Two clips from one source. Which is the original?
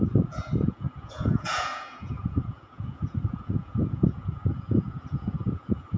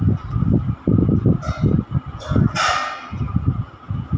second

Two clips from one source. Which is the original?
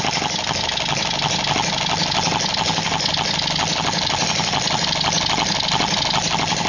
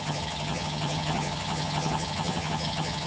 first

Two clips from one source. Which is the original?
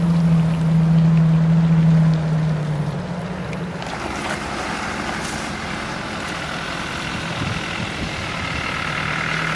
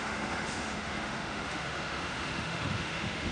first